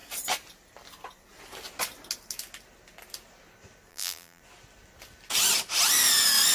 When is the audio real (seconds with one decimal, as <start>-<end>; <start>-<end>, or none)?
0.0-3.9; 4.4-6.5